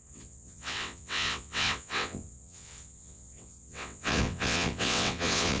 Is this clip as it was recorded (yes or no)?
no